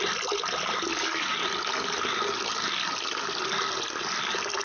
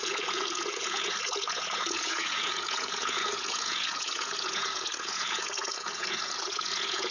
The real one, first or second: first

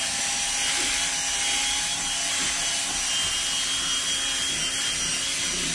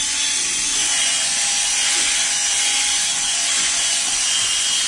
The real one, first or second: first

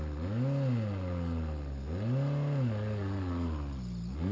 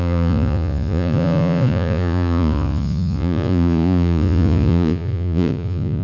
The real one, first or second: first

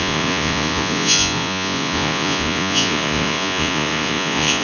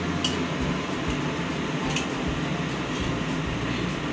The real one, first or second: second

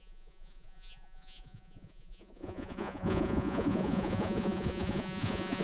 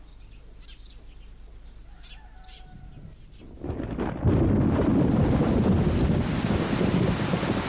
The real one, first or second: second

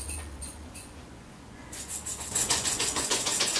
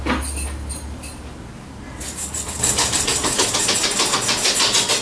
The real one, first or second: second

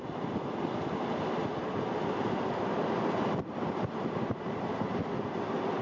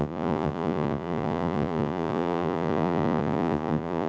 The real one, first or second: first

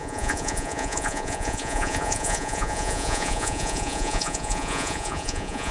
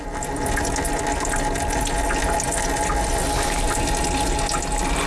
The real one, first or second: second